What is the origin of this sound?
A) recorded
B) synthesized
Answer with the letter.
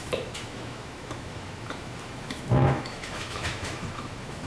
B